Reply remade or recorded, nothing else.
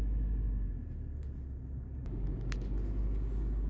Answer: recorded